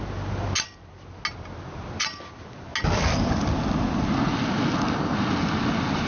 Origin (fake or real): real